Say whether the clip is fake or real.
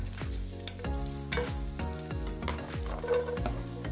real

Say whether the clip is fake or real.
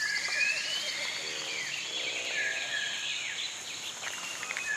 fake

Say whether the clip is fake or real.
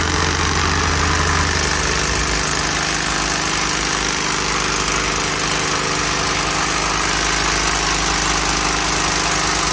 real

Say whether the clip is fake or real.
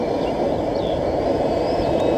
fake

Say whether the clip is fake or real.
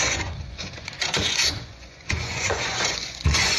fake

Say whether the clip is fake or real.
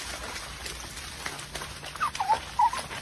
real